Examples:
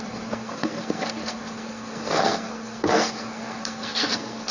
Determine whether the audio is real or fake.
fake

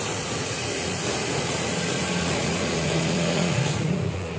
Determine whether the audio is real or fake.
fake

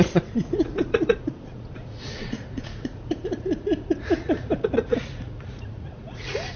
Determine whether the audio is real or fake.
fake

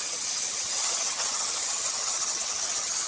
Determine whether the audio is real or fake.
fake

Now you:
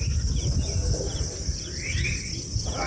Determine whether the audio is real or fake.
real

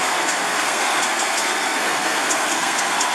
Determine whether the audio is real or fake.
fake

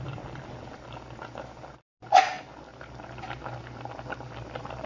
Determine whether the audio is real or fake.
real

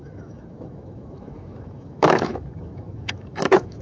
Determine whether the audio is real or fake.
fake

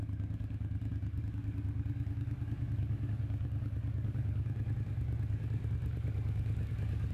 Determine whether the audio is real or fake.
fake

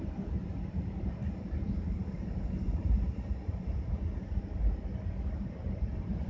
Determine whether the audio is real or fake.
fake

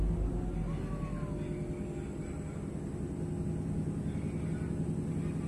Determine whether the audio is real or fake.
real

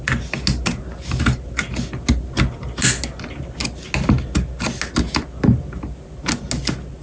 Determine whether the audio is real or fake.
real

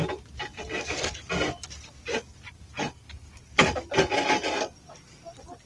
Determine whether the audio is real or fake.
real